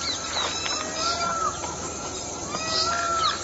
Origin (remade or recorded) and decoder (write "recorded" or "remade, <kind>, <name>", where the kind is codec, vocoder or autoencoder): recorded